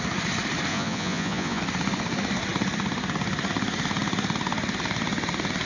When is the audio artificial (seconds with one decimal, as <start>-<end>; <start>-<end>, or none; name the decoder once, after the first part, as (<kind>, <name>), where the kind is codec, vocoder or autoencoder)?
0.7-1.6 (vocoder, Vocos)